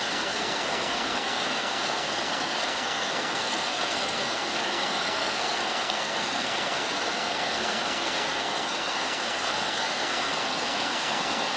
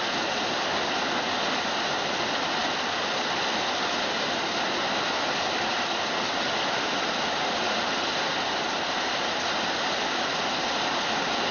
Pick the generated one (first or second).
first